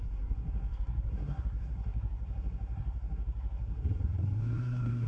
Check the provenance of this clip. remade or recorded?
remade